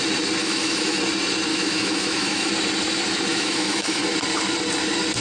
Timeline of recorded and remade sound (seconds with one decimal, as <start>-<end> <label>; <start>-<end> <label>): 0.0-0.4 recorded; 0.4-1.0 remade; 1.0-1.5 recorded; 1.5-2.5 remade; 2.5-3.3 recorded; 3.3-4.0 remade; 4.0-5.2 recorded

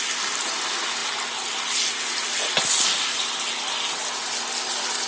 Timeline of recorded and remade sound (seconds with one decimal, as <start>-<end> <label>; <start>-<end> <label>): 0.0-5.1 recorded

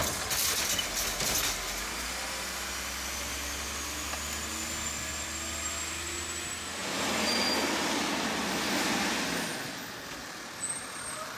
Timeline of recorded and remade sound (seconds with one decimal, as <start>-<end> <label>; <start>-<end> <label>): 0.0-11.4 recorded

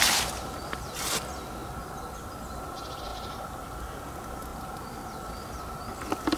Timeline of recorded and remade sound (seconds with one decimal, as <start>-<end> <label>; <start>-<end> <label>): 0.0-6.4 recorded

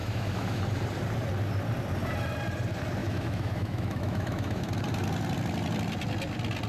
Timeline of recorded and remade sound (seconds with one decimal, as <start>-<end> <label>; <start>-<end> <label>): 0.0-0.6 remade; 0.6-3.0 recorded; 3.0-4.7 remade; 4.7-6.7 recorded

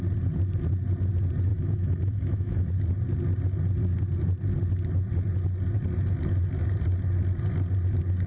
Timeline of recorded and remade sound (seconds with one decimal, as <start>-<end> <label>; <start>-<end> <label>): 0.0-1.5 recorded; 1.5-2.7 remade; 2.7-8.3 recorded

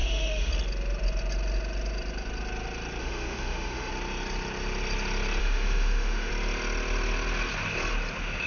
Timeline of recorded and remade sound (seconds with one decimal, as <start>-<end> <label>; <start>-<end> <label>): 0.0-0.5 remade; 0.5-3.0 recorded; 3.0-3.9 remade; 3.9-5.4 recorded; 5.4-6.3 remade; 6.3-8.5 recorded

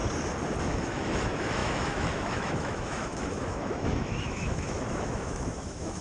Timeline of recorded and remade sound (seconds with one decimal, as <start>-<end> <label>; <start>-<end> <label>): 0.0-0.6 recorded; 0.6-6.0 remade